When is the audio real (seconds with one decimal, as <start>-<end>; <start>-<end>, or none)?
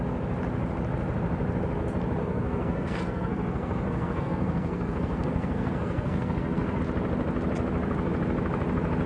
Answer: 0.0-2.2; 6.8-9.1